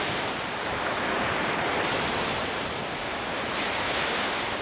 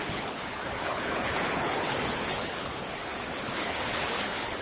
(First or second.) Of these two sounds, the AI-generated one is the second